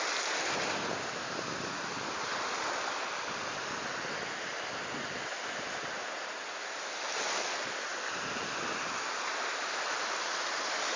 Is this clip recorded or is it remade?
recorded